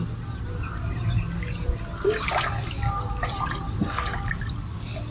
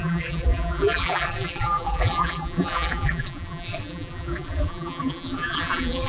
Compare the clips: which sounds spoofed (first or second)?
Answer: second